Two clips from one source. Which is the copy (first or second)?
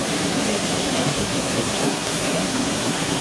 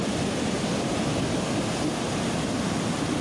first